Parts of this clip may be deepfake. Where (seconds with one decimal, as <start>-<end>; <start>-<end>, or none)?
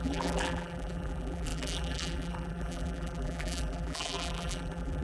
0.0-5.0